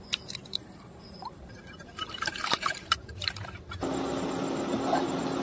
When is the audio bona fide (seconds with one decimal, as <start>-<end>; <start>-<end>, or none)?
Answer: 0.0-0.5; 3.7-5.4